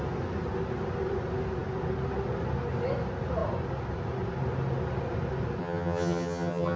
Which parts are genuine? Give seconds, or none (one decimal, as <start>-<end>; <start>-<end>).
0.0-5.6